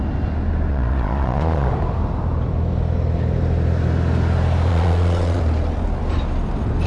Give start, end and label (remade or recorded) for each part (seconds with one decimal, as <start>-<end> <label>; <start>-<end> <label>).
0.0-0.7 recorded; 0.7-1.7 remade; 1.7-4.7 recorded; 4.7-5.4 remade; 5.4-6.9 recorded